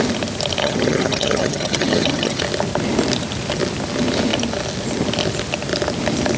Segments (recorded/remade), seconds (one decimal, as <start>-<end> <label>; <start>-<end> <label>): 0.0-0.6 recorded; 0.6-2.4 remade; 2.4-6.4 recorded